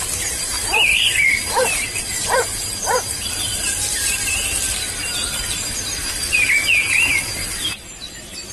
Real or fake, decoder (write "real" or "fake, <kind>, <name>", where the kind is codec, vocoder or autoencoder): fake, vocoder, BigVGAN v2